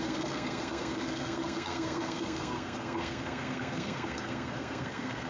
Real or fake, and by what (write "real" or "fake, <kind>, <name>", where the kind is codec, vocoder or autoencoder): fake, codec, SNAC